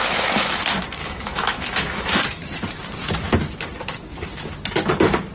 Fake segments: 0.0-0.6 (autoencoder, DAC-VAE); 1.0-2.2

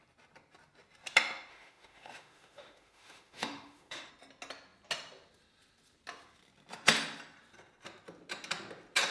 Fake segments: 1.5-4.1 (autoencoder, DAC-VAE)

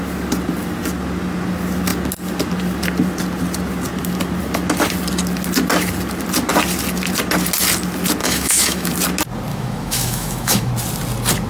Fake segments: 8.2-8.9 (autoencoder, DAC-VAE); 9.5-10.7

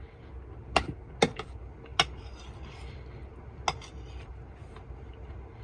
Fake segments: none

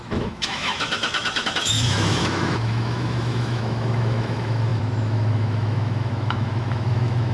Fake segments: 0.0-7.3 (autoencoder, DAC-VAE)

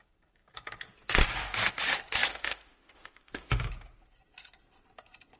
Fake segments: 2.3-3.6 (autoencoder, DAC-VAE)